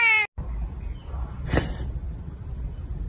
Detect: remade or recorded recorded